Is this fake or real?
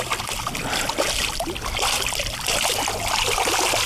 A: real